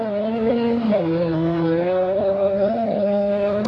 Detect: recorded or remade remade